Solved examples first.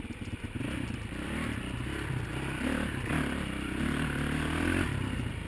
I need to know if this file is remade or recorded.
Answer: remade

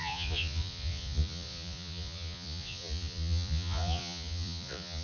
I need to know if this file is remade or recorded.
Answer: remade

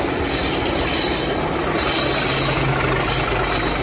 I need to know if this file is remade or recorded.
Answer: recorded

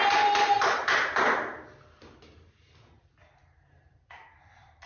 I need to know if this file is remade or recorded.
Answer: recorded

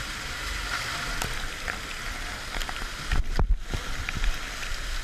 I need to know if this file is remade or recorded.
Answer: recorded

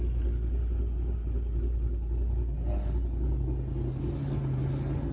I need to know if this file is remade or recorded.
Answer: recorded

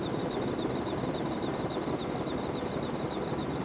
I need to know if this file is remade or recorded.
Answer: recorded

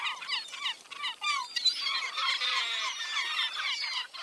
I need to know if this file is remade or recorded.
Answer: recorded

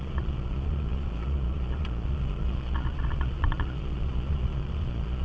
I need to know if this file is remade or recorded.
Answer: remade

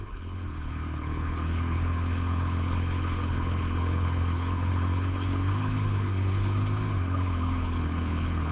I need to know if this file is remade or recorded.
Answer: remade